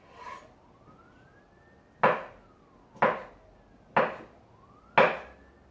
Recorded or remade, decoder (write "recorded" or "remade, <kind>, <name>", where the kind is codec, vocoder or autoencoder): recorded